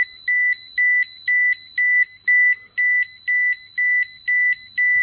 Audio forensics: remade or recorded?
recorded